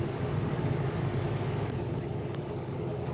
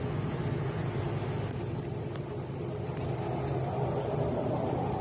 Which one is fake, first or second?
first